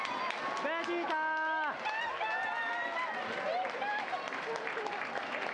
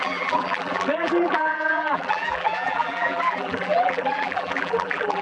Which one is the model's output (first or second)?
second